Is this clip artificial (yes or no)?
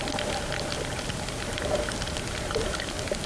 no